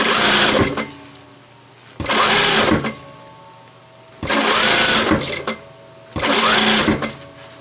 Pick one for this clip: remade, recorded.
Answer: recorded